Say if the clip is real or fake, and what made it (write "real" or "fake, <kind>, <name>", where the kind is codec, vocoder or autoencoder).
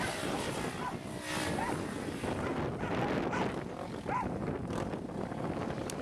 real